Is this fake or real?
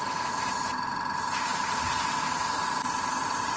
fake